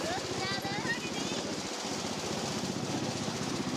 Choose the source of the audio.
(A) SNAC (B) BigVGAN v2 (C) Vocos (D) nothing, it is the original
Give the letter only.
D